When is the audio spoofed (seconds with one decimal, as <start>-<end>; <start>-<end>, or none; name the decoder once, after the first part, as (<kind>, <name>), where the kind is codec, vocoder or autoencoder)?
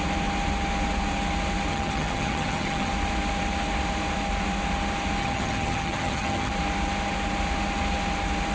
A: 1.7-2.9 (vocoder, HiFi-GAN); 5.2-6.5